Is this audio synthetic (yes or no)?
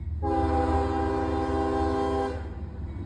no